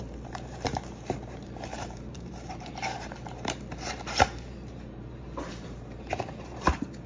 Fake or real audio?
fake